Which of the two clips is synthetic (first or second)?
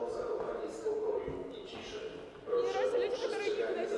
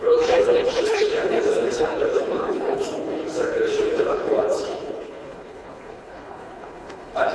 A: second